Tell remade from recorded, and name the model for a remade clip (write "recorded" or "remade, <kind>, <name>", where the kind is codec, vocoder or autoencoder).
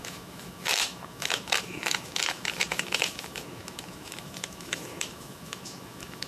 remade, autoencoder, DAC-VAE